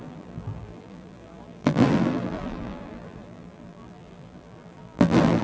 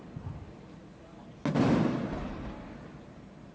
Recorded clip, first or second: second